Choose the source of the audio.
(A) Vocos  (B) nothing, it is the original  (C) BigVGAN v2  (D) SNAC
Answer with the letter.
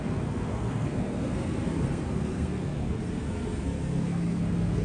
D